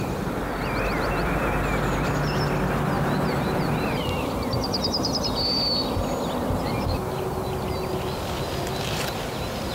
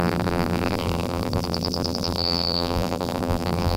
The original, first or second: first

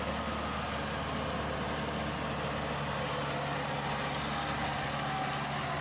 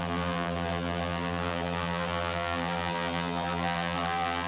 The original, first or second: first